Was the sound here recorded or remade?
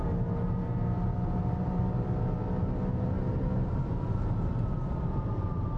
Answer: recorded